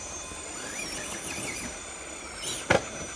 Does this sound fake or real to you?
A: real